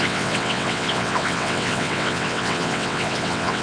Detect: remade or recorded remade